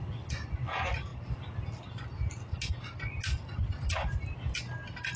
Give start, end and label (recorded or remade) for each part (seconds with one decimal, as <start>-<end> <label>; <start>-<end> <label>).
0.0-5.2 recorded